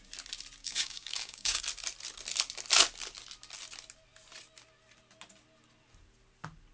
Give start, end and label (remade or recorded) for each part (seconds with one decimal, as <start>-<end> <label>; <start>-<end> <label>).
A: 0.0-0.6 recorded; 0.6-1.6 remade; 1.6-6.7 recorded